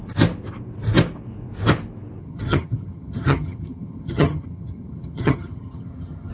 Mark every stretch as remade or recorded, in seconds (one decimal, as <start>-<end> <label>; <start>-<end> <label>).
0.0-2.2 recorded; 2.2-6.3 remade